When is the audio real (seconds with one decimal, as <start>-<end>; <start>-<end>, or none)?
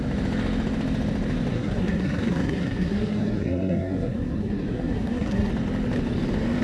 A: 0.0-1.5; 5.5-6.6